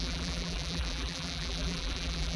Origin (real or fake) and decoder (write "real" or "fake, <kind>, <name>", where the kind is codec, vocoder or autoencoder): fake, vocoder, BigVGAN v2